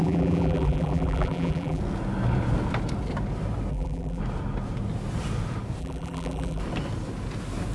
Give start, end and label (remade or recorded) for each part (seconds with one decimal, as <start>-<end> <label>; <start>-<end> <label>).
0.0-1.8 remade; 1.8-3.7 recorded; 3.7-4.2 remade; 4.2-5.8 recorded; 5.8-6.6 remade; 6.6-7.7 recorded